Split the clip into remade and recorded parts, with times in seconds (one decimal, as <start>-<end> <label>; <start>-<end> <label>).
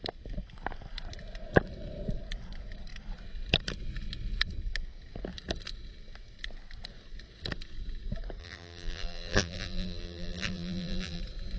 0.0-8.4 recorded; 8.4-11.2 remade; 11.2-11.6 recorded